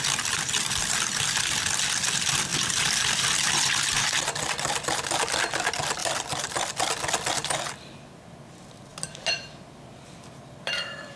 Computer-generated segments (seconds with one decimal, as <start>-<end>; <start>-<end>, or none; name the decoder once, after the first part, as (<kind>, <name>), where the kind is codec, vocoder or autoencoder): 2.5-4.1 (vocoder, BigVGAN v2); 6.0-6.8; 8.9-9.4